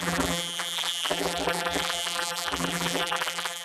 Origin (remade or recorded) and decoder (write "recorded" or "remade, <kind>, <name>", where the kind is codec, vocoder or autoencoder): remade, vocoder, BigVGAN v2